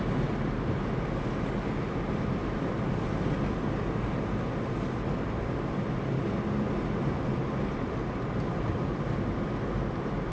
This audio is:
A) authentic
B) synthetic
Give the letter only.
A